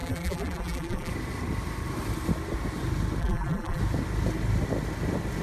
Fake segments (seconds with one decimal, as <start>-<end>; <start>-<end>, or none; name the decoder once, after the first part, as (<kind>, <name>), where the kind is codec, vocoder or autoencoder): 0.0-1.1 (vocoder, BigVGAN v2); 3.2-3.8